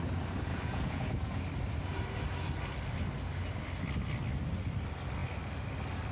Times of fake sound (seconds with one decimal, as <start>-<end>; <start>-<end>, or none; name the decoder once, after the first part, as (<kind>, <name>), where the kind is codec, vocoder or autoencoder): 0.5-1.4 (vocoder, Vocos)